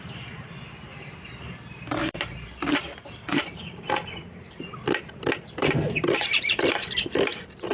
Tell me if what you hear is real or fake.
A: fake